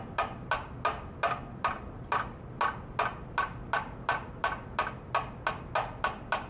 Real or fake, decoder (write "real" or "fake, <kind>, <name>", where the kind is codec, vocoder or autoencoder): real